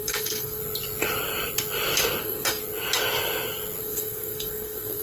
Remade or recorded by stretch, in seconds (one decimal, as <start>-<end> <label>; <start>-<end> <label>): 0.0-0.6 remade; 0.6-2.2 recorded; 2.2-2.6 remade; 2.6-3.8 recorded; 3.8-5.0 remade